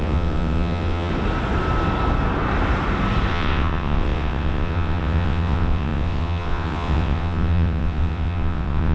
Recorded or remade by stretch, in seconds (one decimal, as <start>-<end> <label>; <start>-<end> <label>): 0.0-1.1 remade; 1.1-3.3 recorded; 3.3-8.9 remade